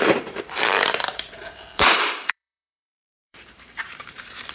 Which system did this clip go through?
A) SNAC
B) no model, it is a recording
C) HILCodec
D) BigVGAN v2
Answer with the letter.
D